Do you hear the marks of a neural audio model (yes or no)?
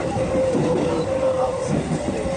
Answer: yes